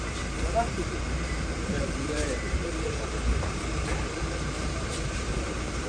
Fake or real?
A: fake